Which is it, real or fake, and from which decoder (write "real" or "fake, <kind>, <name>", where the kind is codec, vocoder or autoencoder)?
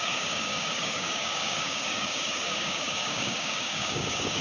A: fake, codec, DAC